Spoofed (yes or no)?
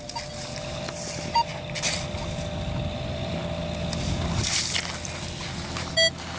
no